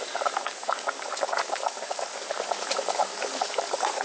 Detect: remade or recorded remade